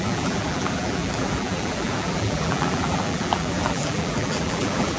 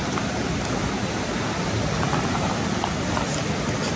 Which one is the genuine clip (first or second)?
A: second